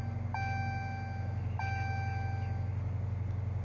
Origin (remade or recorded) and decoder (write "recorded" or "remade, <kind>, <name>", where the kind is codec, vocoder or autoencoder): recorded